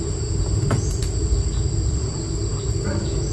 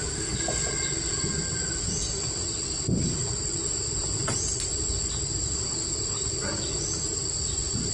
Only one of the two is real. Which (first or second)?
first